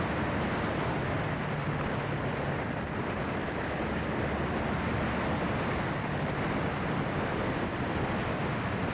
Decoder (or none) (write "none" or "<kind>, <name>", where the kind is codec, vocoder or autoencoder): none